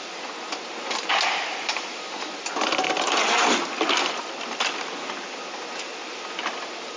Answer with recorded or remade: recorded